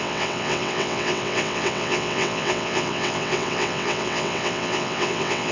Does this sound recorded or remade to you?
remade